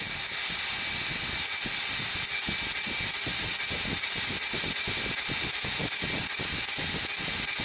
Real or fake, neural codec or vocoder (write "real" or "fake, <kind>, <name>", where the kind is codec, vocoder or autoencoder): real